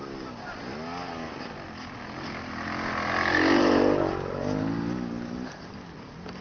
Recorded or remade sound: recorded